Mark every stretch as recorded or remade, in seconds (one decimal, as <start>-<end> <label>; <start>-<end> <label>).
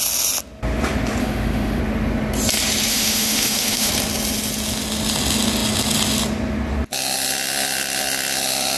0.0-1.2 recorded; 1.2-1.8 remade; 1.8-2.9 recorded; 2.9-3.9 remade; 3.9-8.8 recorded